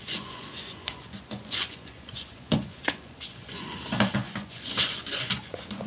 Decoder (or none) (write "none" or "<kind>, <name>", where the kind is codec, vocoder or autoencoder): vocoder, Vocos